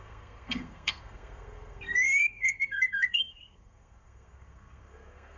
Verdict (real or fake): fake